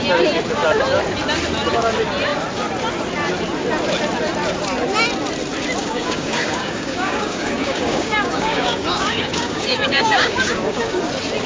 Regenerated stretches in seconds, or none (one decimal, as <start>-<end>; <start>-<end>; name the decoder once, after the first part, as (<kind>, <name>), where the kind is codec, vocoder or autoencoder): 5.8-11.0 (codec, DAC)